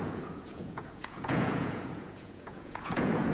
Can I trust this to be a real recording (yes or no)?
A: no